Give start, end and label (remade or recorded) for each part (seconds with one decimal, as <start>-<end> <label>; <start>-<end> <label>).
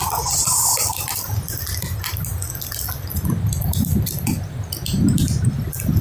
0.0-0.6 recorded; 0.6-1.2 remade; 1.2-6.0 recorded